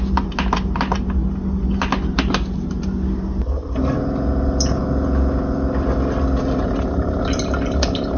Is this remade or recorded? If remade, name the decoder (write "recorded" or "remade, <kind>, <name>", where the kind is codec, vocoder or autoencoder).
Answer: recorded